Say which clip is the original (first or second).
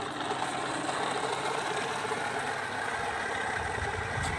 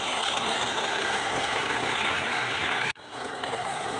first